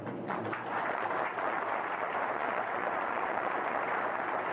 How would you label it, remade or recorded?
remade